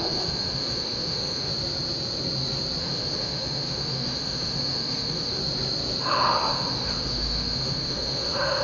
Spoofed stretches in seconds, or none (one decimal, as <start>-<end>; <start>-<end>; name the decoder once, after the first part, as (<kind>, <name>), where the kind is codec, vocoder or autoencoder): 0.0-1.5 (autoencoder, DAC-VAE); 2.8-5.4; 6.0-8.6